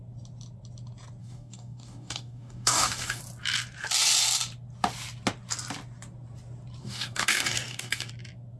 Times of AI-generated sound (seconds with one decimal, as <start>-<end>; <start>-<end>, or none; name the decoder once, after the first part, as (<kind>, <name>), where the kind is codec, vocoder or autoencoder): 1.2-3.2 (codec, DAC); 6.8-8.1